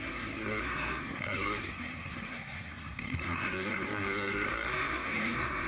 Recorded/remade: remade